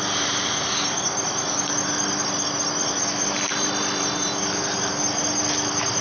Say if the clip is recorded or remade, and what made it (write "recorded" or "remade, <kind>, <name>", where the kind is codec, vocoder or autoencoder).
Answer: recorded